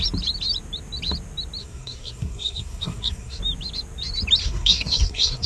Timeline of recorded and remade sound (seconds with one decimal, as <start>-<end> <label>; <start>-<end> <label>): 0.0-1.6 recorded; 1.6-3.4 remade; 3.4-4.4 recorded; 4.4-5.5 remade